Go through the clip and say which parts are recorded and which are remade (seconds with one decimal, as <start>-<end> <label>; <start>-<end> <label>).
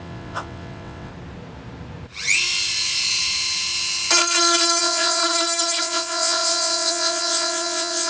0.0-1.1 remade; 1.1-4.8 recorded; 4.8-5.2 remade; 5.2-5.8 recorded; 5.8-8.1 remade